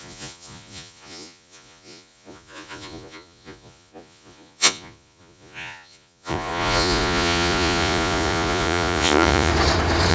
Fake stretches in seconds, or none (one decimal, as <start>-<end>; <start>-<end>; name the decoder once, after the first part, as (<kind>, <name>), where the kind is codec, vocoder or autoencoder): 0.0-9.5 (vocoder, Vocos)